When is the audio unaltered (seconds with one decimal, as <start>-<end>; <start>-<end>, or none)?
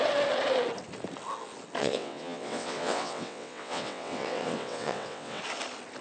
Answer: 0.0-1.8; 5.4-6.0